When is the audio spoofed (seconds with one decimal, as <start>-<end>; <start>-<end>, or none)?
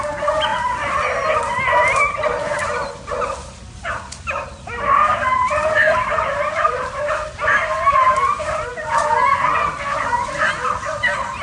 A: 5.1-8.7